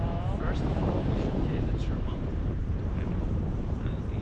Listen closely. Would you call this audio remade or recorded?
remade